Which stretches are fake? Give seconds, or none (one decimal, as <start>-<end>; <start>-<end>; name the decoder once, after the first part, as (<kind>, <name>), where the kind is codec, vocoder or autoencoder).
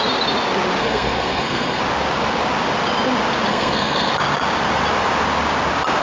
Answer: 0.8-1.8 (codec, SNAC); 3.5-4.1